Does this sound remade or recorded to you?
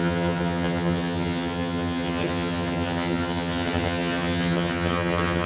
remade